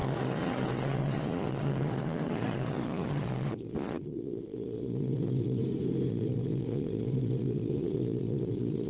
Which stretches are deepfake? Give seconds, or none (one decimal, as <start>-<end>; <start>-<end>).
0.0-5.6; 6.1-8.9